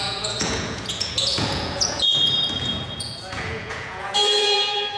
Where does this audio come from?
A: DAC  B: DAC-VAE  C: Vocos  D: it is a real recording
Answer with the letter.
C